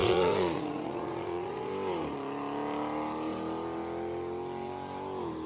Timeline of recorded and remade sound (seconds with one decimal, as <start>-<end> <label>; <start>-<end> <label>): 0.0-1.7 remade; 1.7-5.5 recorded